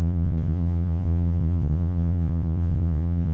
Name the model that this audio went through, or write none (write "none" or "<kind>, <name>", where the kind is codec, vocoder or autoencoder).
vocoder, Vocos